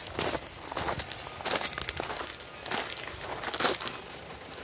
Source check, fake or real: real